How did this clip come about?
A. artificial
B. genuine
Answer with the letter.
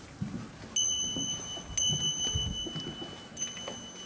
B